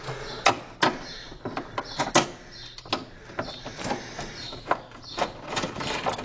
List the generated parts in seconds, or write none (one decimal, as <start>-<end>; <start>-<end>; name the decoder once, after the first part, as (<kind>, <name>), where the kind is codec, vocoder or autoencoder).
1.2-2.1 (vocoder, BigVGAN v2)